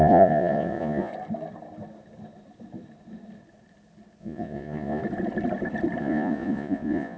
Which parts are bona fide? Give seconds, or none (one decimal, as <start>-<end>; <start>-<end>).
1.1-4.2; 5.0-6.0